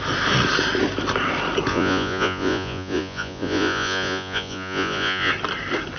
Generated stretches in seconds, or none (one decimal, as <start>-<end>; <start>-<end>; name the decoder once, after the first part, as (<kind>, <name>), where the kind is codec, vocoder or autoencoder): 1.7-5.3 (vocoder, Vocos)